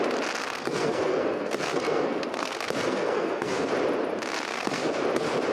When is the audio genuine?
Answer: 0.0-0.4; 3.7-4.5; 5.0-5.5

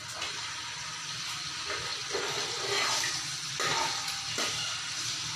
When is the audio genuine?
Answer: 0.0-5.4

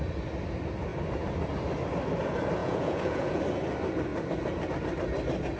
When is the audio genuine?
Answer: 0.0-2.6; 3.4-5.6

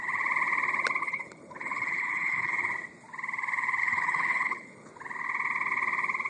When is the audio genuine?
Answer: 0.0-1.0; 2.5-3.8; 4.9-6.3